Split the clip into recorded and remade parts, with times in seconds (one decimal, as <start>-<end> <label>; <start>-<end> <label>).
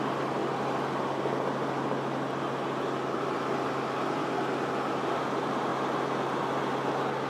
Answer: 0.0-7.3 recorded